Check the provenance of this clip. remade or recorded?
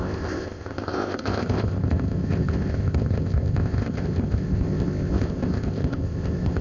remade